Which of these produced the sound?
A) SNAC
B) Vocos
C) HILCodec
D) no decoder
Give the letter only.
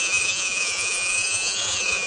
B